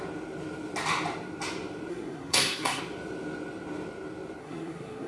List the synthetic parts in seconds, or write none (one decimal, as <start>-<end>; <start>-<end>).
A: 1.9-2.8; 4.4-5.1